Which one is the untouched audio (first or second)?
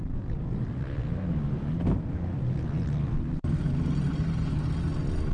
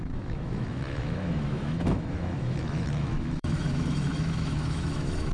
first